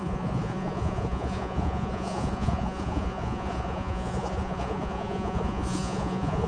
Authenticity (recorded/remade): remade